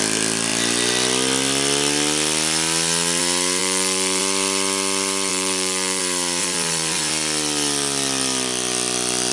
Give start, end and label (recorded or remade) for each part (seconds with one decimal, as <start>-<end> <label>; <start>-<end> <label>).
0.0-3.6 recorded; 3.6-4.2 remade; 4.2-5.3 recorded; 5.3-6.0 remade; 6.0-6.4 recorded; 6.4-7.1 remade; 7.1-9.3 recorded